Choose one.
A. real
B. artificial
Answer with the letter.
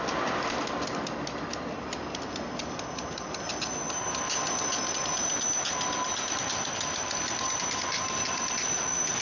A